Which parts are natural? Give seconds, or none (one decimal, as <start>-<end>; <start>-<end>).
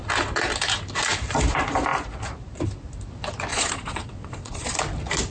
0.0-3.5; 4.8-5.3